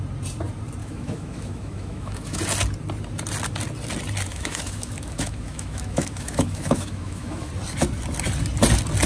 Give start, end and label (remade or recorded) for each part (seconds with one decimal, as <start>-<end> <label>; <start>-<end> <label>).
0.0-0.8 recorded; 0.8-2.4 remade; 2.4-4.3 recorded; 4.3-7.5 remade; 7.5-9.1 recorded